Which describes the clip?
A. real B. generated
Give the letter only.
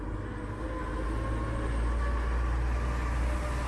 A